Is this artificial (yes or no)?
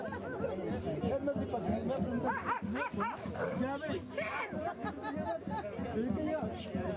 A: no